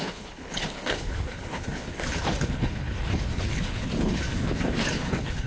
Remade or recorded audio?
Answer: remade